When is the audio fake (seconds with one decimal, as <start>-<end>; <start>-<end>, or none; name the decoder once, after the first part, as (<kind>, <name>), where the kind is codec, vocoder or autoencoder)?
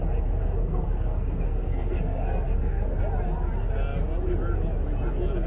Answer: 0.6-3.0 (codec, SNAC)